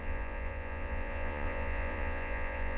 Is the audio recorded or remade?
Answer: remade